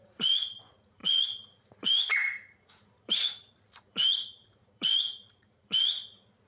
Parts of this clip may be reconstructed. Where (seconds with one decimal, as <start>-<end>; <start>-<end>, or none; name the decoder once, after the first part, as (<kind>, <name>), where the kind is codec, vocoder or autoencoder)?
0.0-6.5 (vocoder, Vocos)